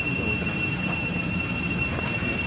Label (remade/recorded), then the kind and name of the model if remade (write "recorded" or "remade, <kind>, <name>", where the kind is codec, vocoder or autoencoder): remade, vocoder, BigVGAN v2